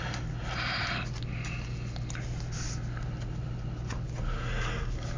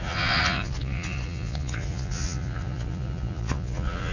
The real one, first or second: first